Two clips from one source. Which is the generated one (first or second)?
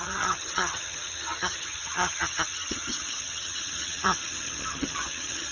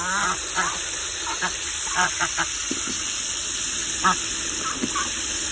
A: first